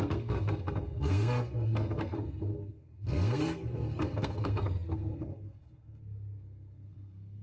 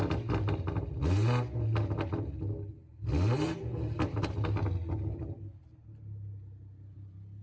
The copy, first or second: first